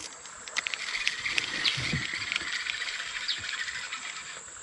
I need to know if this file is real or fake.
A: real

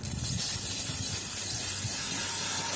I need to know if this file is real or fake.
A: real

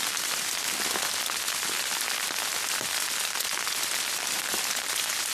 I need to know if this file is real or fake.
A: real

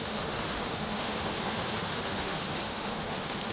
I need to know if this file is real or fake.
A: fake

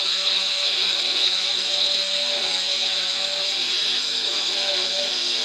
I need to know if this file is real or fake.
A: fake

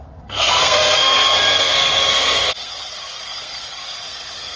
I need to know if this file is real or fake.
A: fake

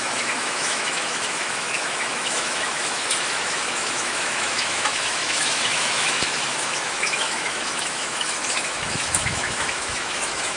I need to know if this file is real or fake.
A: fake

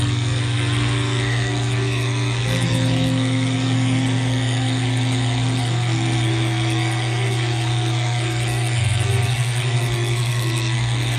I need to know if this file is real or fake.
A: fake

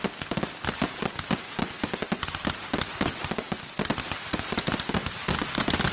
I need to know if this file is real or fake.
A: real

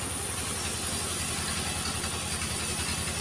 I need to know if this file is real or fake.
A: real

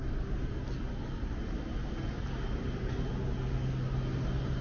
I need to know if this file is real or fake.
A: real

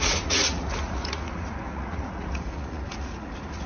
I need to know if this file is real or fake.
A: fake